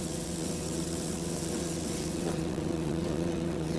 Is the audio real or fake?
fake